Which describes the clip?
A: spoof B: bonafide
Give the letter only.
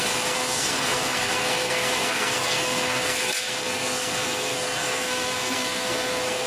A